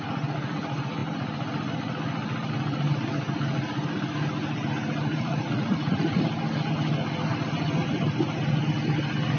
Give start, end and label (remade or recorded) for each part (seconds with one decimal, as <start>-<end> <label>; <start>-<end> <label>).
0.0-5.1 recorded; 5.1-6.2 remade; 6.2-9.4 recorded